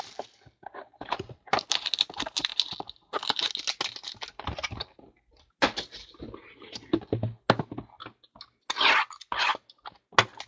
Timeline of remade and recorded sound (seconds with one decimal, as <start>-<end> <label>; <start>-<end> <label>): 0.0-10.5 recorded